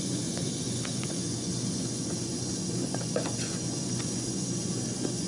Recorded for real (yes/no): no